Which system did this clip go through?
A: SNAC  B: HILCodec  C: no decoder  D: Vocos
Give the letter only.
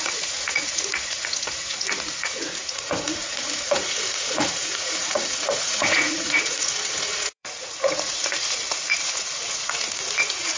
D